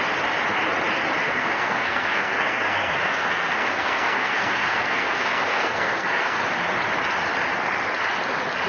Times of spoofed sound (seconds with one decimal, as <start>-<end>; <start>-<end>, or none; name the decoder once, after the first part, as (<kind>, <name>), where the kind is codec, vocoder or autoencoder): 1.2-6.4 (codec, SNAC)